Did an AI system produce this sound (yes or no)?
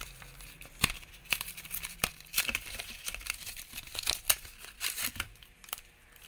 yes